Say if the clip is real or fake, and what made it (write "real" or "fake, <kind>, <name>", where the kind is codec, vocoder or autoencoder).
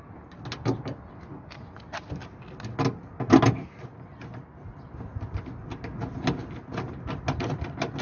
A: real